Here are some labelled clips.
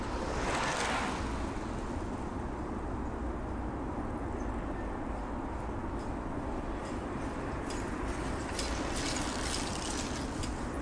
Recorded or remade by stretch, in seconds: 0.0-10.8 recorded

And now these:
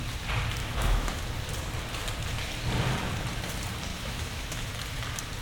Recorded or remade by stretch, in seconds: 0.0-0.6 recorded; 0.6-1.2 remade; 1.2-3.9 recorded; 3.9-4.7 remade; 4.7-5.4 recorded